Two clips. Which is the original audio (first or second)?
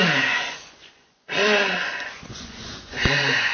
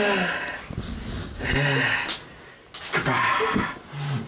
second